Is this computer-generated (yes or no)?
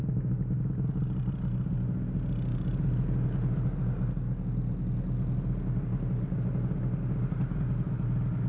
no